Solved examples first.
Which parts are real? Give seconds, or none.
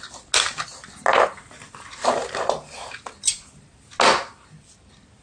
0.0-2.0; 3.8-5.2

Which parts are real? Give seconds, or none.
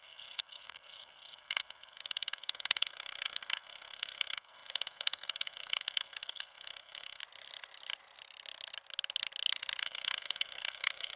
7.2-9.8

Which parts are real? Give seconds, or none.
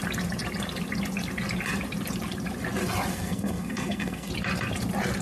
0.0-3.1; 4.3-5.2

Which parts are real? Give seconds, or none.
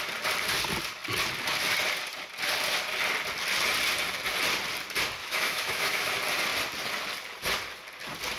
0.0-5.2; 6.1-8.4